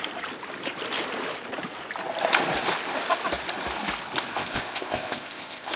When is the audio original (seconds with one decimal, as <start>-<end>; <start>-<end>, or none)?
0.0-4.3